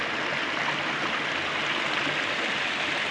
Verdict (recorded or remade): recorded